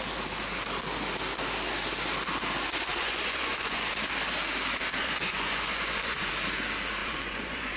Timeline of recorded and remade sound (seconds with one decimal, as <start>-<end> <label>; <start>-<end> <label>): 0.0-2.9 recorded; 2.9-3.9 remade; 3.9-5.0 recorded; 5.0-6.3 remade; 6.3-7.0 recorded; 7.0-7.8 remade